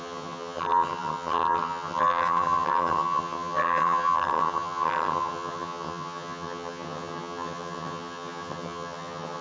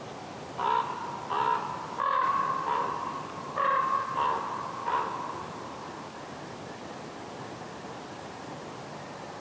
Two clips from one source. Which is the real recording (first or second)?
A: second